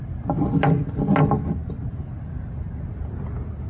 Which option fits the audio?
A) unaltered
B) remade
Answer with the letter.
A